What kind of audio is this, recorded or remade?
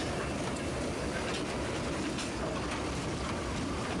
remade